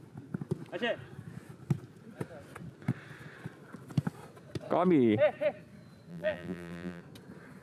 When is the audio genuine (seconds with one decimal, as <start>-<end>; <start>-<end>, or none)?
0.0-6.1; 7.0-7.6